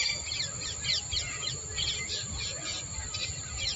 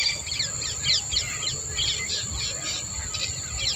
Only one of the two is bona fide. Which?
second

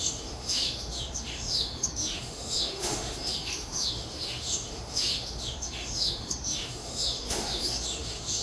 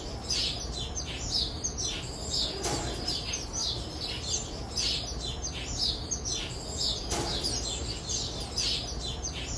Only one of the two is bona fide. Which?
second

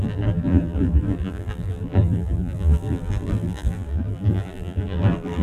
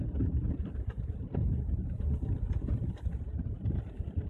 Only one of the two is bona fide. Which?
second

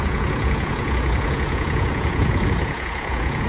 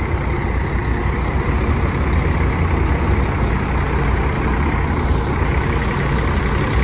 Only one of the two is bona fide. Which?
second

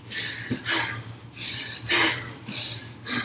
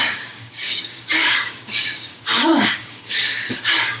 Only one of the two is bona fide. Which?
first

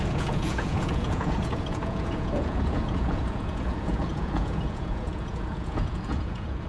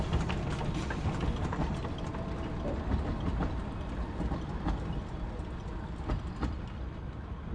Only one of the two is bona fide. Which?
second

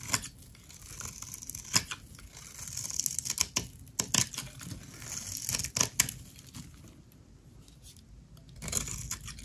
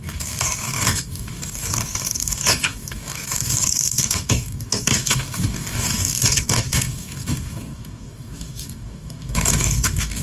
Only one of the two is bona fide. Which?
first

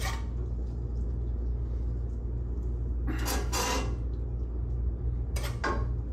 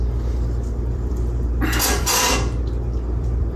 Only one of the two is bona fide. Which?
first